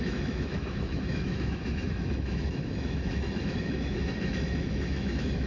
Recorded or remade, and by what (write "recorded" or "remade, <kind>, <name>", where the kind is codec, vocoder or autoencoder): remade, autoencoder, DAC-VAE